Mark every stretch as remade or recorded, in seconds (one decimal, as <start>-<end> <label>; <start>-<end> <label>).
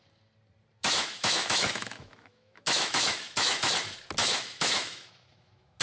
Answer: 0.0-0.8 recorded; 0.8-3.7 remade; 3.7-4.2 recorded; 4.2-5.8 remade